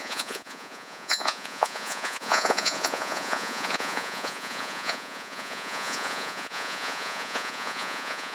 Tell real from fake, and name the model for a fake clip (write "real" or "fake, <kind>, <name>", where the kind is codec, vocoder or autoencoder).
fake, vocoder, Vocos